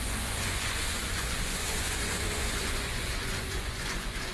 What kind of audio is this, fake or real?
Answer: fake